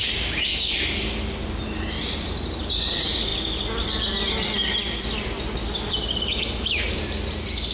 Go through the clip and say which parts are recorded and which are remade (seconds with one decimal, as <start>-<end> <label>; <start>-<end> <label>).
0.0-0.8 remade; 0.8-7.7 recorded